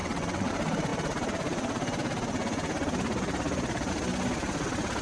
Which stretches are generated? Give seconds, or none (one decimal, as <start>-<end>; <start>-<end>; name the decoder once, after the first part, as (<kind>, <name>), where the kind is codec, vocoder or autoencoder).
0.0-0.5 (vocoder, WaveNeXt)

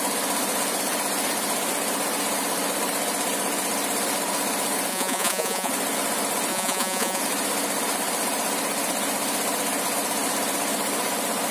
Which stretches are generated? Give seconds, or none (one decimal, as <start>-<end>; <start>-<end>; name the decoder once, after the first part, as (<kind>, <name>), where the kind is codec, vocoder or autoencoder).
4.9-5.7 (vocoder, Vocos); 6.5-7.2